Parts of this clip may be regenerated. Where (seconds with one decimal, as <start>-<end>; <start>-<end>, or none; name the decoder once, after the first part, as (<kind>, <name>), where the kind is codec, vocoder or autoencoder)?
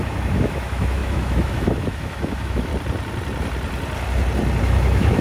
0.0-2.7 (autoencoder, DAC-VAE); 4.6-5.2